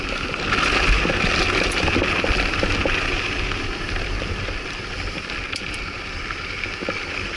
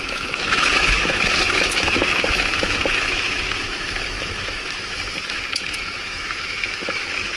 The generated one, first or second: second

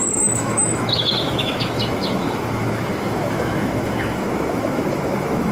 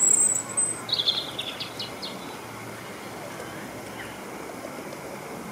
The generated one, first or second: first